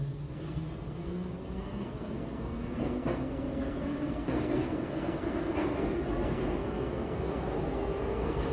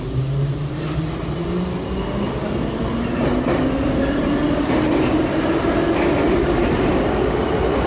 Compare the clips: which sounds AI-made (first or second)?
first